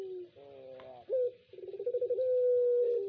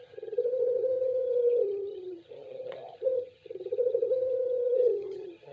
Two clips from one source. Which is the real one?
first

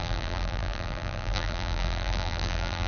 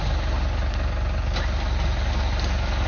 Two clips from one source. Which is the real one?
second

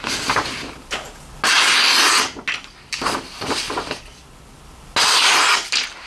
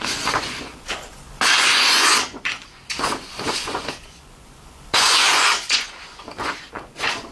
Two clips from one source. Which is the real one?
first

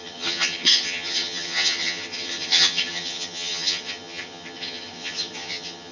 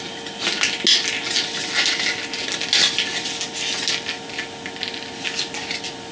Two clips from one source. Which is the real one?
second